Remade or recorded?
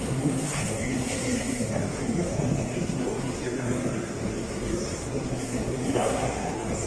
remade